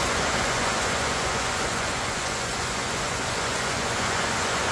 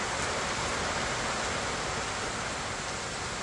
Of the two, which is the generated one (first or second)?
first